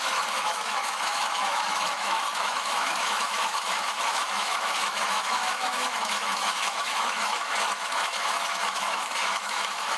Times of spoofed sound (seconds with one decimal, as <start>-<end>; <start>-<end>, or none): 0.0-10.0